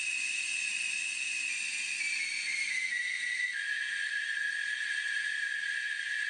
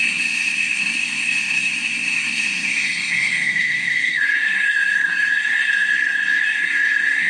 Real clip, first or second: first